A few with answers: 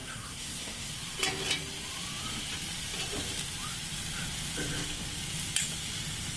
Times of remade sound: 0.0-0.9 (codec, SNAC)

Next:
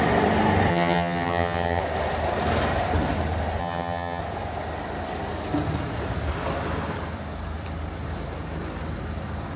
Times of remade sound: 0.7-1.8 (vocoder, HiFi-GAN); 3.6-4.2

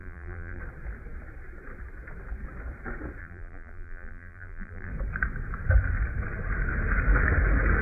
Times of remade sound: 0.0-0.6 (vocoder, BigVGAN v2); 3.2-4.9

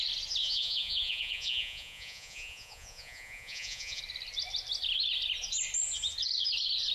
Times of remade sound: 0.4-4.0 (vocoder, Vocos)